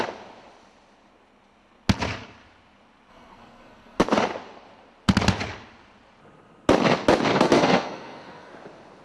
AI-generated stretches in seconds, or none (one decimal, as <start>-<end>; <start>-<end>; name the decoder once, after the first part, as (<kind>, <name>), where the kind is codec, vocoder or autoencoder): 3.1-4.0 (codec, SNAC); 7.3-8.5